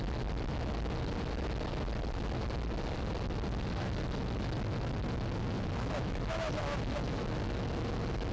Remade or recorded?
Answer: recorded